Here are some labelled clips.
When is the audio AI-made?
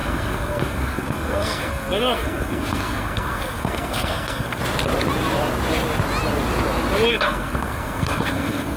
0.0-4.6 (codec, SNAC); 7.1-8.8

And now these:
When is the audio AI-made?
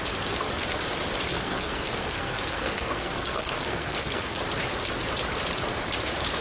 1.3-4.4 (codec, SNAC)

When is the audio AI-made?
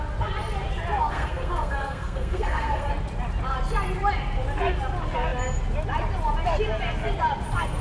1.1-2.9 (codec, SNAC)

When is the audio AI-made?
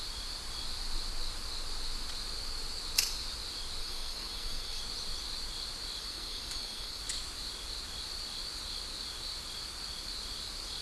3.8-4.8 (codec, SNAC); 6.0-7.0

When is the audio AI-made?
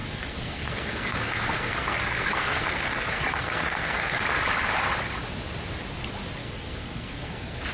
0.0-4.2 (codec, SNAC); 6.4-7.7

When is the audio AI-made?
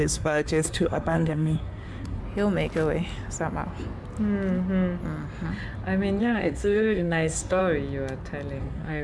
0.0-2.2 (codec, SNAC); 6.2-7.6; 8.6-9.0